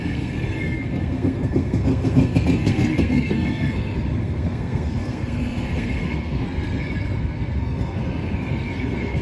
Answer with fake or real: fake